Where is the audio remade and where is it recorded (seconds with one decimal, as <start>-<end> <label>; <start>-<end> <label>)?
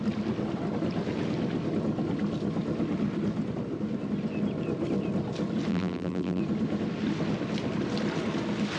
0.0-5.7 recorded; 5.7-6.4 remade; 6.4-8.8 recorded